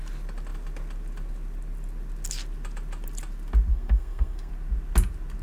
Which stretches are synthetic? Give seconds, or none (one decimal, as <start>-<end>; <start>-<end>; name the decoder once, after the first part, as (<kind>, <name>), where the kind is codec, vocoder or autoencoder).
3.7-4.5 (codec, SNAC)